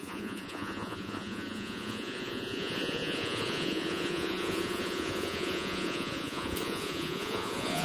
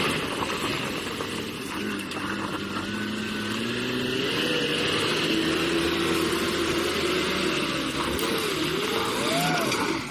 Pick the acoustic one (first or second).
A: second